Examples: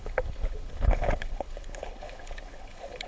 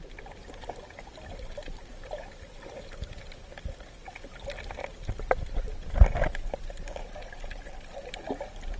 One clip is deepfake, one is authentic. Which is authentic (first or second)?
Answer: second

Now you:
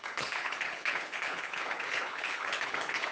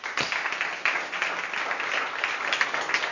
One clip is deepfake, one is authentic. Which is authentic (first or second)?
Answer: second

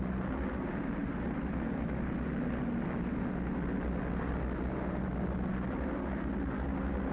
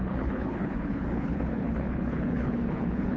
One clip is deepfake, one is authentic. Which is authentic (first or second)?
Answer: first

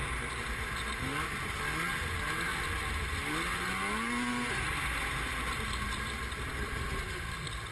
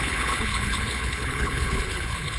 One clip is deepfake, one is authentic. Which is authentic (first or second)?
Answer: first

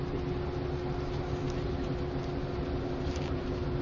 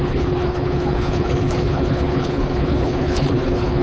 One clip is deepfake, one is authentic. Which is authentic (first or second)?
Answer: first